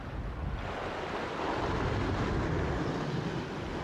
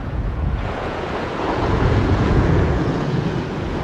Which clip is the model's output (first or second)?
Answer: second